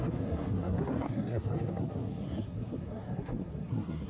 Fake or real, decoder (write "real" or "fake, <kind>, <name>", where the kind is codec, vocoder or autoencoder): fake, codec, SNAC